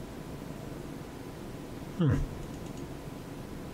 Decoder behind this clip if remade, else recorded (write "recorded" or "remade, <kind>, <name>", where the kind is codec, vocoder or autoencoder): recorded